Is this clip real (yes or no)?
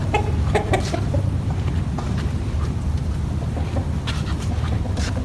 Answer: yes